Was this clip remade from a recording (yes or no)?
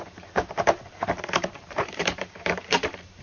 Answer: yes